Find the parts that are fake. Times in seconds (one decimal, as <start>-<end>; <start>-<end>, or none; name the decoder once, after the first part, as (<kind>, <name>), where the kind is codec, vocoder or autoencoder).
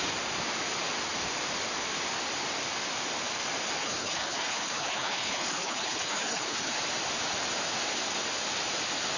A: 3.8-6.8 (codec, HILCodec)